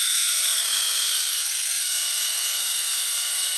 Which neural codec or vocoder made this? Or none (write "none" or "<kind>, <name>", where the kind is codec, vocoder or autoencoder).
codec, SNAC